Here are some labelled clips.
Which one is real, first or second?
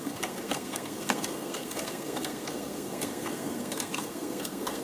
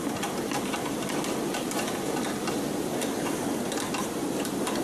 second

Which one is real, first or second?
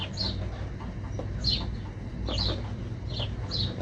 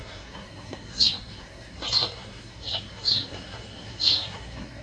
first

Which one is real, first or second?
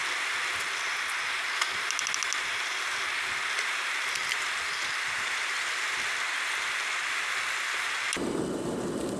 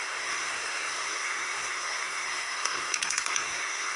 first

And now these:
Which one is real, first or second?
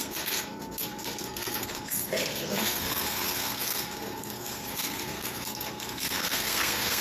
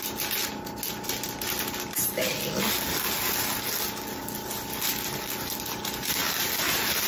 second